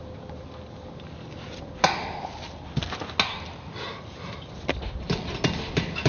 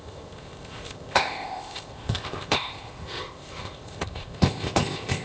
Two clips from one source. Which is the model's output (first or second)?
second